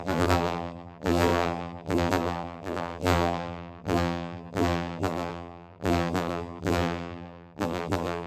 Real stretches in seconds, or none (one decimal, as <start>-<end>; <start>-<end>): none